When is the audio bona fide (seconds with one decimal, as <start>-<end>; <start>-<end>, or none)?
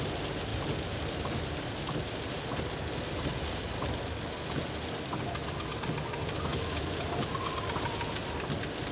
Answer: 0.0-0.5; 1.8-5.4; 5.9-6.5; 7.1-8.9